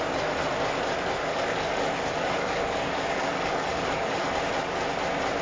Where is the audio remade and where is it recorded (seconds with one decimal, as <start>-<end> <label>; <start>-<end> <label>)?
0.0-1.2 recorded; 1.2-4.4 remade; 4.4-5.4 recorded